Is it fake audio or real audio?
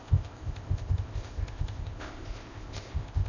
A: fake